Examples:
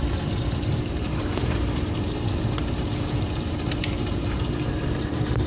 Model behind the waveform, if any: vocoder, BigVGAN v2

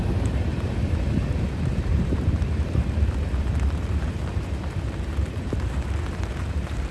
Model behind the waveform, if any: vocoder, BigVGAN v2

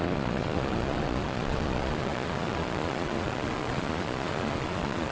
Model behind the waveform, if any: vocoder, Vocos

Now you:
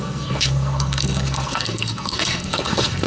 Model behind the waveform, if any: codec, SNAC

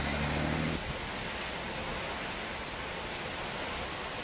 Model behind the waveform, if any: none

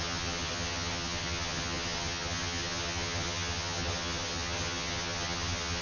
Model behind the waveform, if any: vocoder, HiFi-GAN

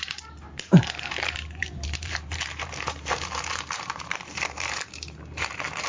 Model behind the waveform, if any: vocoder, BigVGAN v2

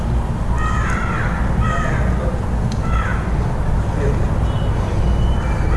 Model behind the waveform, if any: none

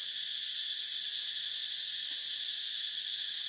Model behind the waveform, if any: none